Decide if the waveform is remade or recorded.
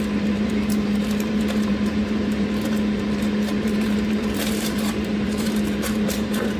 remade